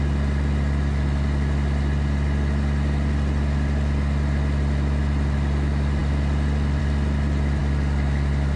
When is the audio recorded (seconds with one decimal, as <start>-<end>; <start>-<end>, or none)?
0.0-8.6